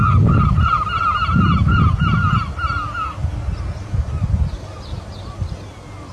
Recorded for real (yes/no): yes